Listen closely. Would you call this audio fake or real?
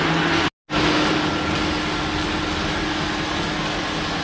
real